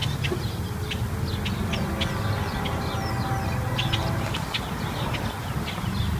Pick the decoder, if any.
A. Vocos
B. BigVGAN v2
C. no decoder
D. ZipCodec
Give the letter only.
C